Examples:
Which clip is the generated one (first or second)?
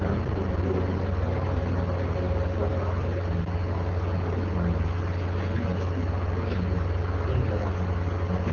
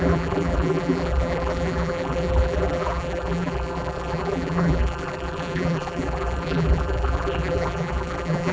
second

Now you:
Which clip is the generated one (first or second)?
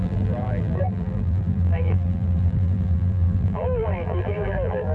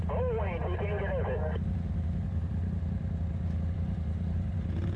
first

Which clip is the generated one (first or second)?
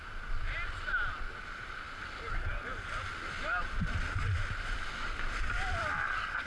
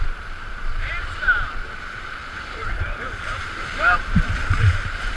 second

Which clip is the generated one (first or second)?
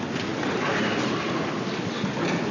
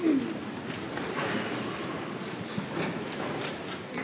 second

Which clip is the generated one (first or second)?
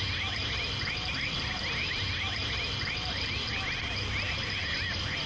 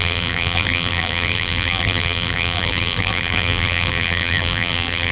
second